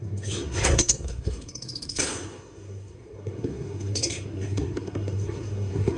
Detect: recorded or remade remade